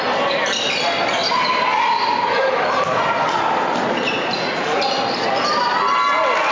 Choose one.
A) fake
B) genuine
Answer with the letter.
B